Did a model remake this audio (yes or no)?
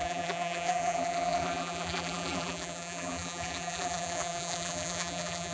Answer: yes